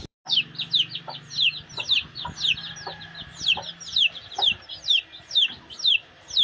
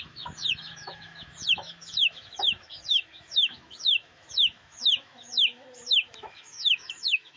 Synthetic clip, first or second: second